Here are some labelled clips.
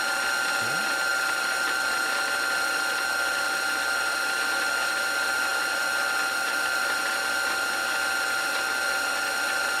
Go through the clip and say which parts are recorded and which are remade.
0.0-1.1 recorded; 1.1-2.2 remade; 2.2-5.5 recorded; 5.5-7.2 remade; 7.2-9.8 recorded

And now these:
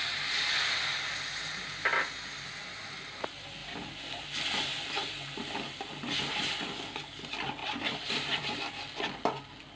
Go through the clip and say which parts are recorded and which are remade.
0.0-7.6 recorded; 7.6-8.4 remade; 8.4-9.8 recorded

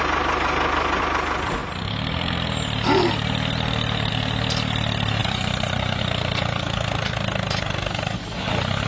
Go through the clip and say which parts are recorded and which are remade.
0.0-5.2 recorded; 5.2-6.0 remade; 6.0-8.9 recorded

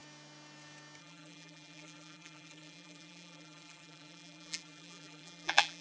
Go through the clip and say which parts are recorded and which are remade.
0.0-1.0 recorded; 1.0-5.8 remade

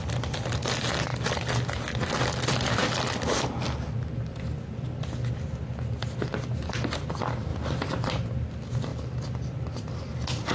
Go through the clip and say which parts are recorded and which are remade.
0.0-7.5 recorded; 7.5-8.1 remade; 8.1-8.9 recorded; 8.9-10.0 remade; 10.0-10.5 recorded

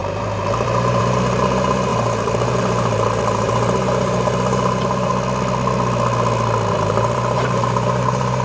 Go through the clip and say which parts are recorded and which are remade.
0.0-5.1 remade; 5.1-6.7 recorded; 6.7-8.4 remade